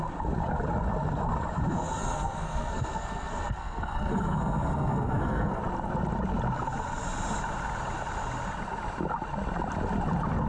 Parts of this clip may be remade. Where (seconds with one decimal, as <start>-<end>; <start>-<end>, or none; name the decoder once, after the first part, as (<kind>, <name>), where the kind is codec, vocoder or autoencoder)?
2.0-5.6 (codec, SNAC)

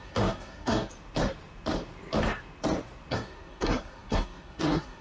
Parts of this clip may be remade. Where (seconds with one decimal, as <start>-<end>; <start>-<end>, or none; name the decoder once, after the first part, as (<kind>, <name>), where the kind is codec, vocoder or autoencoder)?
0.0-0.9 (codec, SNAC); 3.1-5.0